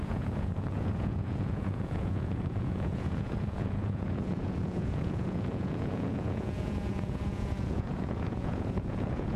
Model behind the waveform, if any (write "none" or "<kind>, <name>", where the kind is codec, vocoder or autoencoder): vocoder, Vocos